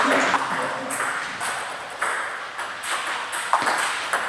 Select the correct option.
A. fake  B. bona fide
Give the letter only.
B